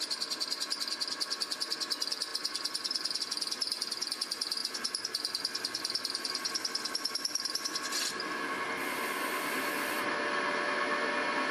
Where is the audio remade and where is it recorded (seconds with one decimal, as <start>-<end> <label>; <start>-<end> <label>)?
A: 0.0-11.5 recorded